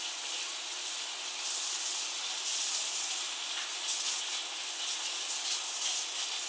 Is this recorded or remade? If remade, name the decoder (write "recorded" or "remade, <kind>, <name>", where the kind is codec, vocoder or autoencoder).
recorded